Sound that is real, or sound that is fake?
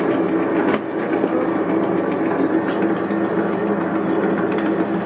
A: real